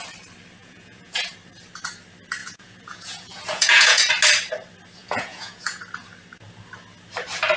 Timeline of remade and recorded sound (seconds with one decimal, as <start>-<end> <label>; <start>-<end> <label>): 0.0-0.6 recorded; 0.6-1.3 remade; 1.3-2.4 recorded; 2.4-4.1 remade; 4.1-5.0 recorded; 5.0-5.8 remade; 5.8-7.6 recorded